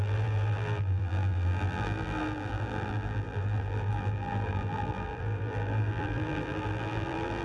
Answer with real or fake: fake